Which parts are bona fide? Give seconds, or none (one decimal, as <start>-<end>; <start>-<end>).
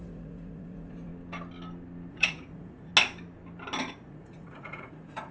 1.1-2.1; 2.9-3.9